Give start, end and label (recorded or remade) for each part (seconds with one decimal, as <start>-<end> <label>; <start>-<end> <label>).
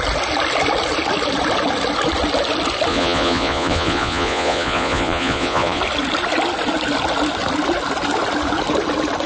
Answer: 0.0-2.9 recorded; 2.9-5.8 remade; 5.8-9.3 recorded